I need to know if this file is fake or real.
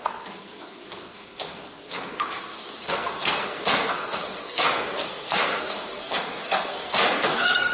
fake